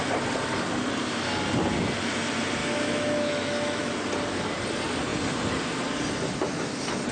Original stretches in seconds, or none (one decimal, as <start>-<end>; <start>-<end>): 0.0-2.6; 3.9-7.1